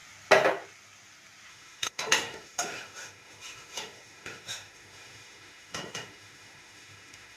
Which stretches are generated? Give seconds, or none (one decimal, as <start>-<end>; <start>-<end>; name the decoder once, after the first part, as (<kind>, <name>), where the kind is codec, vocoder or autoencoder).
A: 1.5-7.4 (autoencoder, DAC-VAE)

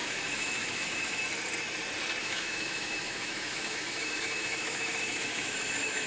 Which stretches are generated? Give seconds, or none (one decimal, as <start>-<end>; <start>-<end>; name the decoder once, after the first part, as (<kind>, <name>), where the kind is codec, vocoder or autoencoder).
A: 0.0-1.2 (autoencoder, DAC-VAE); 2.2-6.1

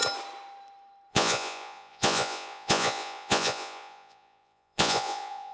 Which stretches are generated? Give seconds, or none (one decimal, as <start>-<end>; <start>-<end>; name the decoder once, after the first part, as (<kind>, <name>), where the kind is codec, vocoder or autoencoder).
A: 1.1-5.5 (vocoder, Vocos)